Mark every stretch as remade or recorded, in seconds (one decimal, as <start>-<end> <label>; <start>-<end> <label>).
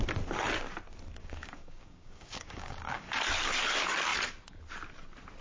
0.0-1.2 recorded; 1.2-3.2 remade; 3.2-5.4 recorded